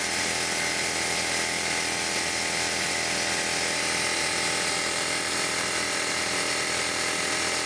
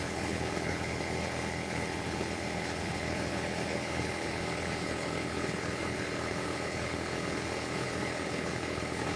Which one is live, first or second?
first